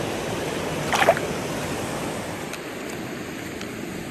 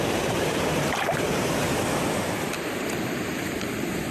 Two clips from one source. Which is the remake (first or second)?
second